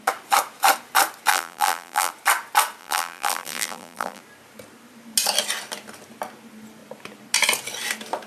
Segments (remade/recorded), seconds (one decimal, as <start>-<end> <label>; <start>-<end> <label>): 0.0-1.3 recorded; 1.3-2.1 remade; 2.1-2.8 recorded; 2.8-4.2 remade; 4.2-8.3 recorded